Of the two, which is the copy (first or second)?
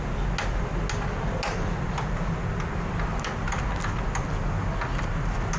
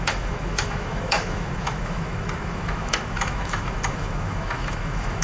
second